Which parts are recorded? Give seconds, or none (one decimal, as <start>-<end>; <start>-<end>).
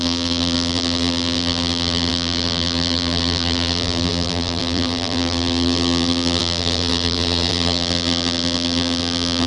none